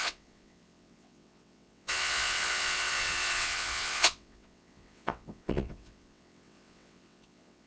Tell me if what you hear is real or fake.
fake